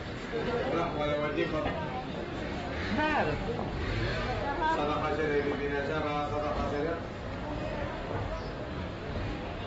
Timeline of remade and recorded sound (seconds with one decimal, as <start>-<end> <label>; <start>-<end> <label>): 0.0-9.7 recorded